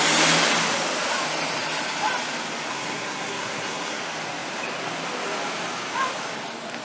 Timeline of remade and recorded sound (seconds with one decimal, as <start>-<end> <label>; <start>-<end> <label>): 0.0-2.7 recorded; 2.7-4.0 remade; 4.0-6.8 recorded